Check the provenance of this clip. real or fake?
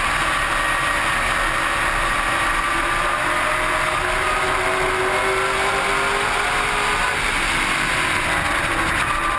real